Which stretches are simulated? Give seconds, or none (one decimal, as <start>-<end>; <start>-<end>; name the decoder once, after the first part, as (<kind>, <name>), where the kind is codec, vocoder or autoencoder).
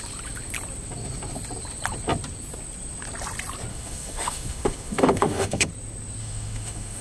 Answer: 3.7-5.7 (autoencoder, DAC-VAE); 6.2-7.0